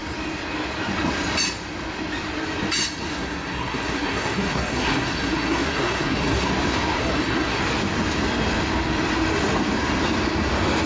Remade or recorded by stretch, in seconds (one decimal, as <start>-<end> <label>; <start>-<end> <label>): 0.0-3.1 recorded; 3.1-6.5 remade; 6.5-7.0 recorded; 7.0-7.6 remade; 7.6-10.9 recorded